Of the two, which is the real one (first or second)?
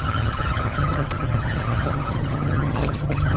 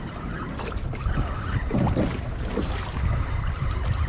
second